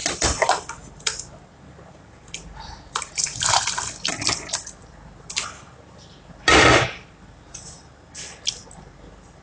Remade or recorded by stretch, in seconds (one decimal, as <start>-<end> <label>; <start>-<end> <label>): 0.0-9.4 recorded